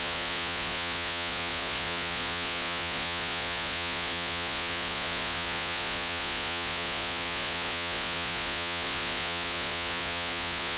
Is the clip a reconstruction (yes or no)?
yes